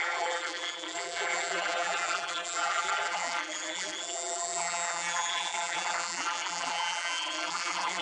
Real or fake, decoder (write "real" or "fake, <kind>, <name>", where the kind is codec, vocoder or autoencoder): fake, vocoder, BigVGAN v2